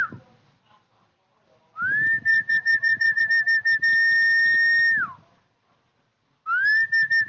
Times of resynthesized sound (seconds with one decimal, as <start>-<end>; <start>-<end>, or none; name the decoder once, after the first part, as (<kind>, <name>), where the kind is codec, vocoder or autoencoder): 2.3-3.2 (vocoder, Vocos)

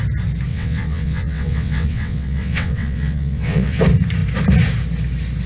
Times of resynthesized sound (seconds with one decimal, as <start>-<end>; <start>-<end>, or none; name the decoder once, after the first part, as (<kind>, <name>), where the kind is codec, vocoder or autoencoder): 0.5-3.8 (vocoder, WaveNeXt)

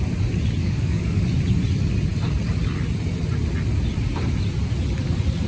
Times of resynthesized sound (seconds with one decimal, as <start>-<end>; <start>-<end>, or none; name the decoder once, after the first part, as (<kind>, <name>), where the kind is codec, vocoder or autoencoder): 0.6-1.2 (codec, DAC)

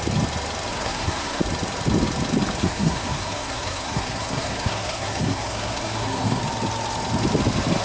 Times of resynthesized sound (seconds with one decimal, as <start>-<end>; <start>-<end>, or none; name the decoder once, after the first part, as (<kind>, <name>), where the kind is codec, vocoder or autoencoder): 0.7-1.4 (codec, SNAC); 2.6-6.4

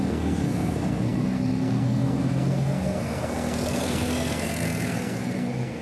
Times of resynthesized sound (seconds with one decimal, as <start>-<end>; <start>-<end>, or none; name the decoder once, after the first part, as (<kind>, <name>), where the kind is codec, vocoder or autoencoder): 0.0-5.8 (codec, SNAC)